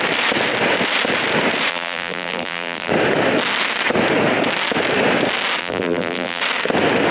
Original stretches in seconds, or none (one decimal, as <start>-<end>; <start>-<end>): 0.0-1.7; 2.9-5.6; 6.4-7.1